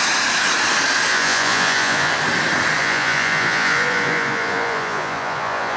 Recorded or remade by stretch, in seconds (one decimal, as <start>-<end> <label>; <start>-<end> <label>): 0.0-1.1 recorded; 1.1-2.1 remade; 2.1-2.8 recorded; 2.8-5.8 remade